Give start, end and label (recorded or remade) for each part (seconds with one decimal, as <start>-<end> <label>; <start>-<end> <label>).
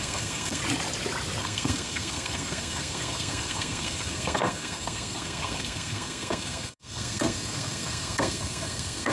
0.0-0.6 remade; 0.6-1.4 recorded; 1.4-9.1 remade